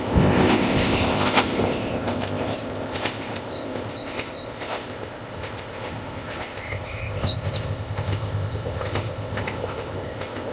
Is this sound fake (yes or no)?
yes